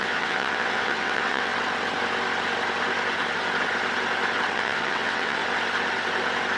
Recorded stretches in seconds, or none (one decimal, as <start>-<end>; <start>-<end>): 1.5-4.5; 5.4-6.6